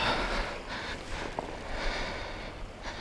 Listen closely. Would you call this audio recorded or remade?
recorded